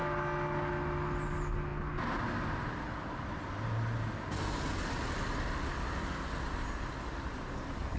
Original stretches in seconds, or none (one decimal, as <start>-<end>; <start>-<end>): 0.0-8.0